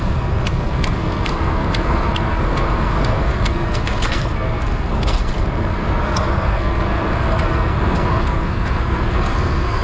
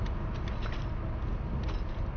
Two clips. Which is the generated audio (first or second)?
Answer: first